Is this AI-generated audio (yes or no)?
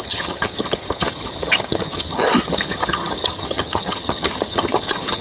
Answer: yes